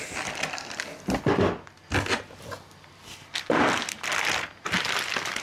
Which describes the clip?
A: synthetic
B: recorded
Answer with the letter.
B